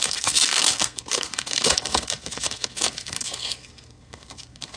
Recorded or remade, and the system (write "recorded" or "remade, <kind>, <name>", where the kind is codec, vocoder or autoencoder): remade, codec, SNAC